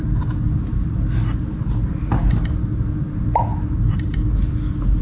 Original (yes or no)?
yes